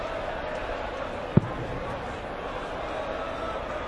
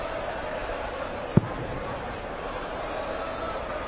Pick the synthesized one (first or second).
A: second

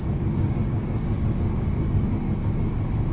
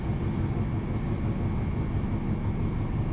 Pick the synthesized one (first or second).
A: first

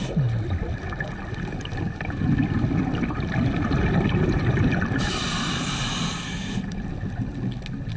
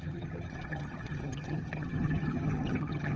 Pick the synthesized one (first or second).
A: second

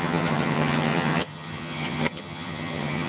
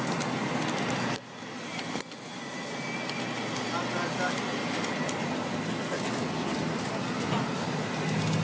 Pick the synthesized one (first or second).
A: first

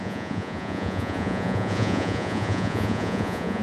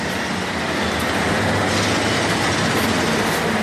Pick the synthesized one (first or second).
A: first